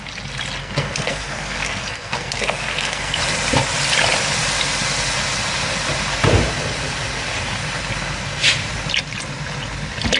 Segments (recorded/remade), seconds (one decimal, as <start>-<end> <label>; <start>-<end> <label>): 0.0-0.6 recorded; 0.6-3.2 remade; 3.2-10.2 recorded

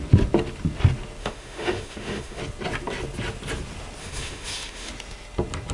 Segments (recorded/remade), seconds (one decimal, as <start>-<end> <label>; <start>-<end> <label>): 0.0-1.2 recorded; 1.2-2.4 remade; 2.4-4.0 recorded; 4.0-4.9 remade; 4.9-5.7 recorded

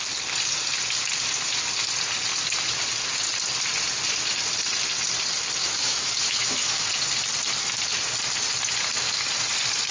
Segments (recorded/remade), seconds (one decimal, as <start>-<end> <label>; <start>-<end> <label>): 0.0-5.6 recorded; 5.6-6.8 remade; 6.8-9.9 recorded

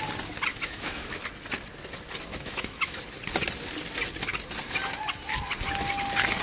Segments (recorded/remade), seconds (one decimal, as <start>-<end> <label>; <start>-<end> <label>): 0.0-0.5 recorded; 0.5-1.1 remade; 1.1-2.3 recorded; 2.3-3.0 remade; 3.0-6.4 recorded

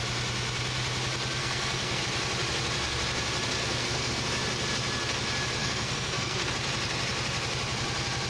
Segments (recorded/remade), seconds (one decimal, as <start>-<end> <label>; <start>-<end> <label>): 0.0-1.4 recorded; 1.4-2.0 remade; 2.0-3.6 recorded; 3.6-4.1 remade; 4.1-5.6 recorded; 5.6-6.5 remade; 6.5-8.3 recorded

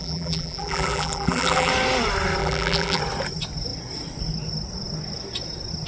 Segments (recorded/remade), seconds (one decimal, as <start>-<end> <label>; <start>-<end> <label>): 0.0-1.7 remade; 1.7-2.4 recorded; 2.4-3.0 remade; 3.0-5.9 recorded

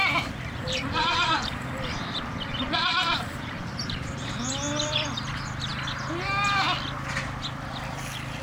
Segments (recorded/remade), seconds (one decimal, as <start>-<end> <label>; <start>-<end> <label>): 0.0-4.3 remade; 4.3-8.4 recorded